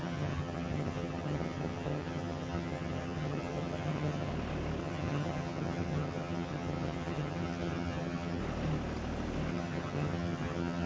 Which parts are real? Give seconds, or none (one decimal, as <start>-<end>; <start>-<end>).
4.3-4.8; 8.4-9.5